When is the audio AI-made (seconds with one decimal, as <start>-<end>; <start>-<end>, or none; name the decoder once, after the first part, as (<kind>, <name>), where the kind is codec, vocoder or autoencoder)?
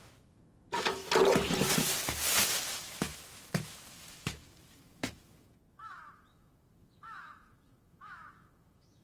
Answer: 0.0-1.0 (autoencoder, DAC-VAE); 2.7-9.0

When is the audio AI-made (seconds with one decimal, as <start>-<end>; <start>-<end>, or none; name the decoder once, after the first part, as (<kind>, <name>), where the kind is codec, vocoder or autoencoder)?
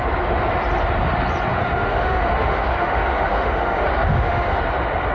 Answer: 1.5-4.6 (autoencoder, DAC-VAE)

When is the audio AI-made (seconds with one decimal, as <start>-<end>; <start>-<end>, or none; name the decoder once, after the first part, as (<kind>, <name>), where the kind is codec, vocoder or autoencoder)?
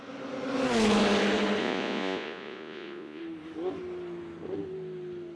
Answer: 1.6-3.2 (vocoder, Vocos)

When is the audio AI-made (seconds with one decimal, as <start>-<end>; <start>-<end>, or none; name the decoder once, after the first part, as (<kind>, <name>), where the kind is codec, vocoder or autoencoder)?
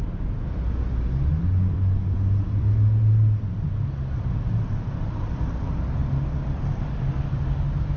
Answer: none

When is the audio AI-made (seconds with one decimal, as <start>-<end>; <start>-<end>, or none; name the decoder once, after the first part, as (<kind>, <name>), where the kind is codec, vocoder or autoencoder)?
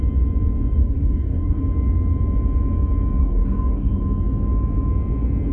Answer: 0.8-1.6 (codec, DAC); 3.2-4.0